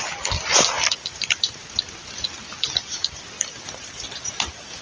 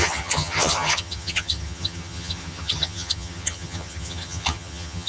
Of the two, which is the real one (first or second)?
first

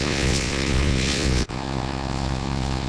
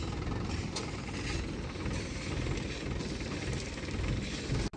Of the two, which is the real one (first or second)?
second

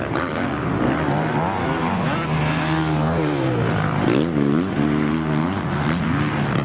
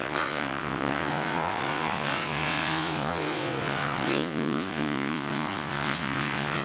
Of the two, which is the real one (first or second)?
first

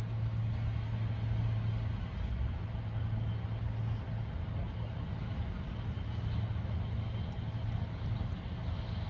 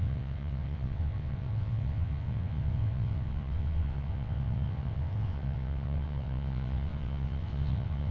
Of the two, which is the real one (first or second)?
first